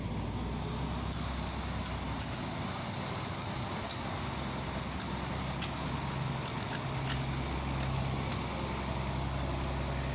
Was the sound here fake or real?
real